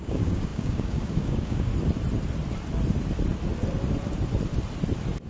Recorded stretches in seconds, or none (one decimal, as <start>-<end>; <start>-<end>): 1.7-5.3